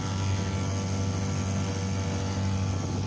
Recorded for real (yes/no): yes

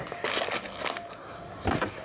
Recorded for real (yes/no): yes